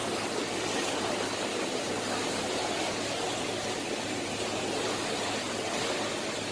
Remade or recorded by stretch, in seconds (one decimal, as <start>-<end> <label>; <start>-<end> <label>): 0.0-6.5 recorded